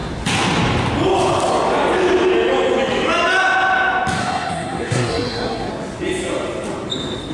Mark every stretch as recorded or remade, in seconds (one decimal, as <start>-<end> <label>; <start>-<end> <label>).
0.0-4.2 recorded; 4.2-5.7 remade; 5.7-7.3 recorded